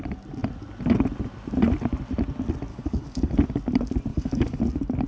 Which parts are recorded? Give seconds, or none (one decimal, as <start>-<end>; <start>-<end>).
0.0-2.7; 3.3-4.1; 4.6-5.1